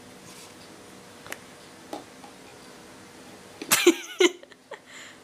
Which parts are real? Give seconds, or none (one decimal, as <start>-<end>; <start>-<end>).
0.0-5.2